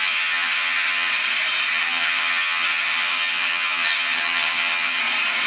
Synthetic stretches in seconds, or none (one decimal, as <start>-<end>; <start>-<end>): 0.0-1.1; 1.7-5.0